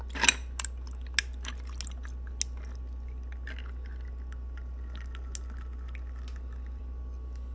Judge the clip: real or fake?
real